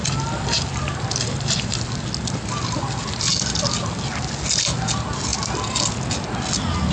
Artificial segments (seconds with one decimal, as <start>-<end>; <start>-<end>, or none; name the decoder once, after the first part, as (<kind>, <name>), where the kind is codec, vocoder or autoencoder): none